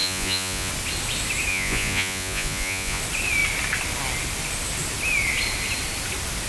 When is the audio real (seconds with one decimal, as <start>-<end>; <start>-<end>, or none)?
0.7-1.5; 3.0-6.5